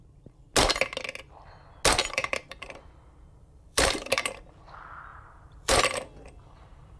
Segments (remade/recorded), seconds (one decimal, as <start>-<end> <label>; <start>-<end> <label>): 0.0-2.0 recorded; 2.0-4.4 remade; 4.4-5.1 recorded; 5.1-5.8 remade; 5.8-7.0 recorded

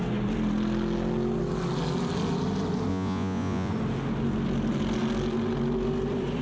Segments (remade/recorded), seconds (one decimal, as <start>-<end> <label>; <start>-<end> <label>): 0.0-2.9 recorded; 2.9-3.7 remade; 3.7-6.4 recorded

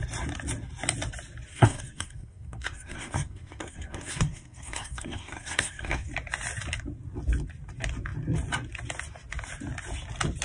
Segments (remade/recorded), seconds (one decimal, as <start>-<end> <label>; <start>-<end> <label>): 0.0-1.5 recorded; 1.5-6.1 remade; 6.1-10.4 recorded

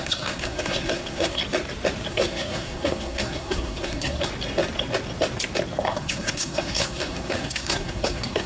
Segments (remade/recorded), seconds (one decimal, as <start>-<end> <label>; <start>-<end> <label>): 0.0-1.4 remade; 1.4-2.1 recorded; 2.1-4.3 remade; 4.3-5.8 recorded; 5.8-8.5 remade

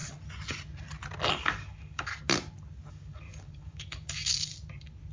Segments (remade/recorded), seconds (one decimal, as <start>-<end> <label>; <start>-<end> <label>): 0.0-1.3 recorded; 1.3-2.1 remade; 2.1-2.9 recorded; 2.9-4.5 remade; 4.5-5.1 recorded

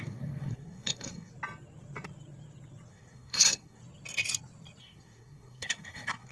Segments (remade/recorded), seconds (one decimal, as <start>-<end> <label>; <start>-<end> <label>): 0.0-1.3 remade; 1.3-2.9 recorded; 2.9-3.8 remade; 3.8-4.8 recorded; 4.8-6.3 remade

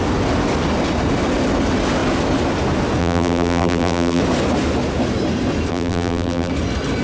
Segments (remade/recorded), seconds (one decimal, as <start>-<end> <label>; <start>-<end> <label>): 0.0-3.0 recorded; 3.0-4.2 remade; 4.2-5.7 recorded; 5.7-6.5 remade; 6.5-7.0 recorded